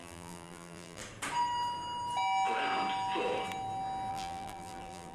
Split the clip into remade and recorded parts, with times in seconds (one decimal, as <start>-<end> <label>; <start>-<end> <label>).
0.0-1.0 remade; 1.0-4.1 recorded; 4.1-5.1 remade